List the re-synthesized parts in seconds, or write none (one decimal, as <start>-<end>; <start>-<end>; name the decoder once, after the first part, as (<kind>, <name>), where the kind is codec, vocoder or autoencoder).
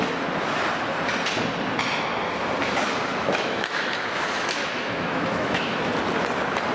3.1-5.9 (autoencoder, DAC-VAE)